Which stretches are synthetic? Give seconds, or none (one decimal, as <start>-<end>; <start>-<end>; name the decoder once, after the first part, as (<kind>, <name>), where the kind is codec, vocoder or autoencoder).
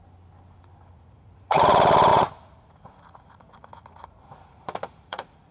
0.9-1.7 (vocoder, Vocos); 2.1-5.5